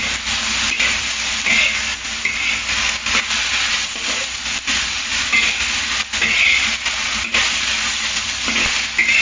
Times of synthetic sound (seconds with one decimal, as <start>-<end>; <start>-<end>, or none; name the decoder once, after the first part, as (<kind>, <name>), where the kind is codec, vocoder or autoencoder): none

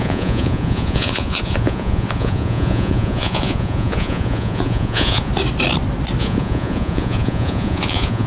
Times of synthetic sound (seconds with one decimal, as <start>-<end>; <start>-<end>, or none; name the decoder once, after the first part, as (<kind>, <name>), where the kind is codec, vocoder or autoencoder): 0.0-5.3 (vocoder, Vocos); 6.2-8.3